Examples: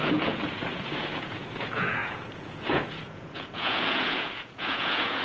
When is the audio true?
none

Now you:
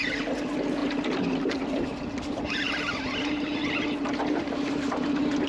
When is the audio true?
0.0-5.5

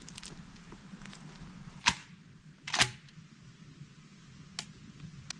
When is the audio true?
0.0-5.4

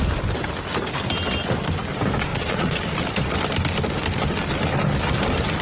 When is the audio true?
0.0-2.3; 2.8-5.6

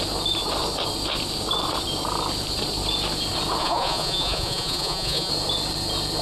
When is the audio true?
0.0-3.6; 5.3-6.2

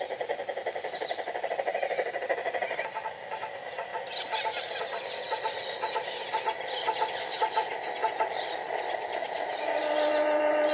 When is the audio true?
0.0-10.7

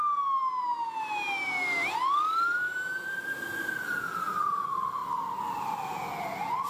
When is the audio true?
0.0-6.7

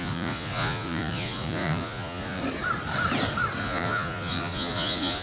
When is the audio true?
2.4-3.6